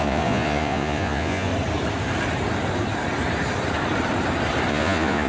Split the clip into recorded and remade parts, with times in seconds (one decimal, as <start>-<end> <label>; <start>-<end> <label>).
0.0-1.5 remade; 1.5-4.7 recorded; 4.7-5.3 remade